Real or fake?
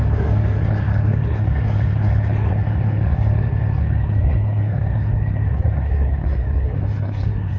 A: fake